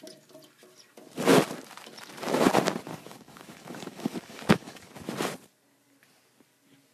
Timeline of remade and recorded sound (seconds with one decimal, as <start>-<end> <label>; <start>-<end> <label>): 0.0-2.9 recorded; 2.9-4.9 remade; 4.9-6.9 recorded